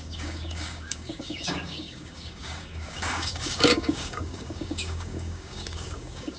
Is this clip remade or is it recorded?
remade